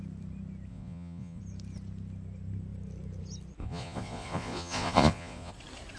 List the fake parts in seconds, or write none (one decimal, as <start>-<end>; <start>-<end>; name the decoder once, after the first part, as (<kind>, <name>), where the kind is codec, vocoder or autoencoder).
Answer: 0.7-1.4 (vocoder, Vocos); 3.6-5.5